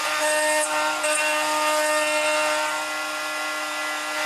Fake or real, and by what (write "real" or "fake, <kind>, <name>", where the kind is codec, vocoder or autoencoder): real